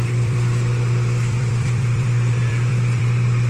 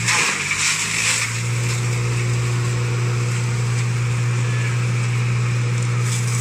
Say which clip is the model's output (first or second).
first